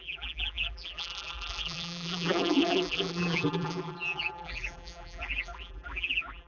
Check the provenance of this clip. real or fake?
fake